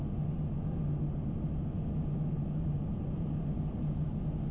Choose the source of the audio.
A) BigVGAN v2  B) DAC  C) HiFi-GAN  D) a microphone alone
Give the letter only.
D